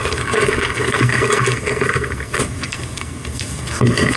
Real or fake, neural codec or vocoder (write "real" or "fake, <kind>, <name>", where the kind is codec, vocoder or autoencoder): fake, codec, SNAC